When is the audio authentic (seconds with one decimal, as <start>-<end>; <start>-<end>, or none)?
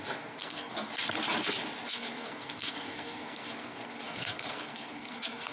0.9-1.9